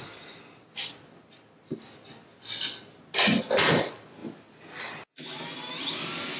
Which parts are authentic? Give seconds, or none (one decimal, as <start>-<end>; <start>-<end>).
0.0-6.4